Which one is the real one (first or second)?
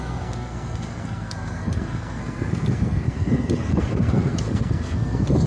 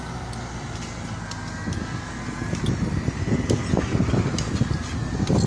second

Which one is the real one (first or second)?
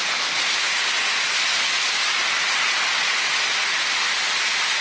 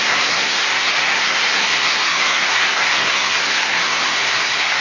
first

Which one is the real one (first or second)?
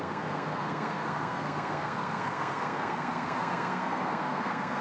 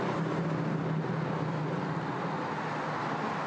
second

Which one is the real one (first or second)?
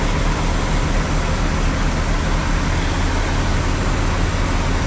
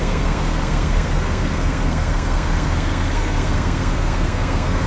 first